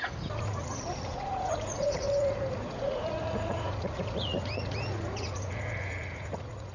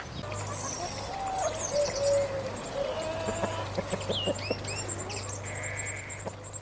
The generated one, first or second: first